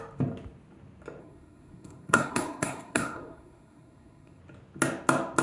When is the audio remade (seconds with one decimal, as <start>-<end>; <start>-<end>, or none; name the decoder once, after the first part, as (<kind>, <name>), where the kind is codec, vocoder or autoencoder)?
1.2-4.4 (codec, SNAC)